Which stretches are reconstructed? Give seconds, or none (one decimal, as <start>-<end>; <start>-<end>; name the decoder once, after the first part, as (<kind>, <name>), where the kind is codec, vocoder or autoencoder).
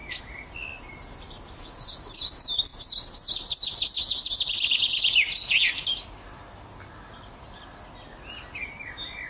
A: none